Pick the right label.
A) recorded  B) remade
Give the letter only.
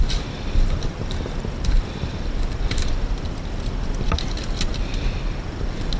A